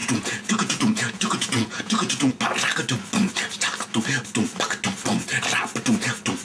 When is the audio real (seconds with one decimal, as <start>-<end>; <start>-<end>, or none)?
2.3-6.4